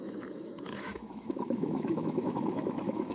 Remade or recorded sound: remade